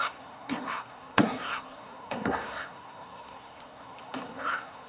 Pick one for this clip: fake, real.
fake